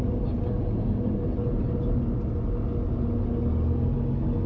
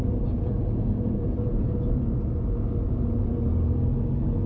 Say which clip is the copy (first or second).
second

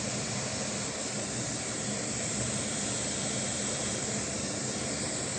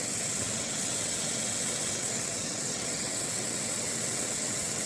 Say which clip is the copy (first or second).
second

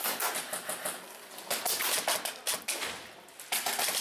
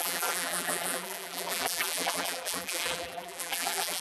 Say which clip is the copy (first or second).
second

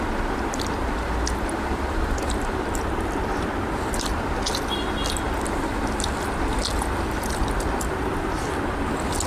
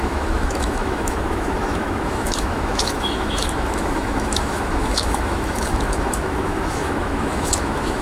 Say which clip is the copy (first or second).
second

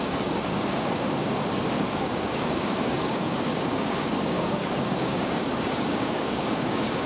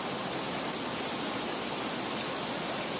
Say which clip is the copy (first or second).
first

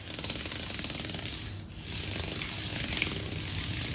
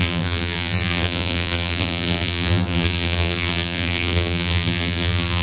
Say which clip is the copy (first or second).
second